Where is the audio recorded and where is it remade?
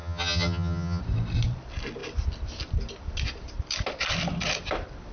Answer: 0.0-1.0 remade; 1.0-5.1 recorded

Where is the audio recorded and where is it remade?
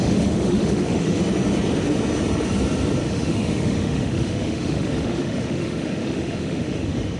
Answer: 0.0-1.2 remade; 1.2-3.1 recorded; 3.1-7.2 remade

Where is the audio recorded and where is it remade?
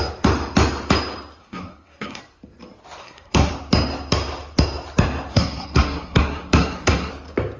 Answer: 0.0-1.4 recorded; 1.4-2.2 remade; 2.2-3.0 recorded; 3.0-3.5 remade; 3.5-5.3 recorded; 5.3-7.1 remade; 7.1-7.6 recorded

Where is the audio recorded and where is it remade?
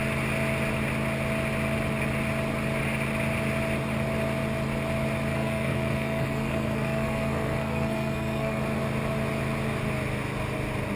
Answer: 0.0-5.3 recorded; 5.3-8.6 remade; 8.6-11.0 recorded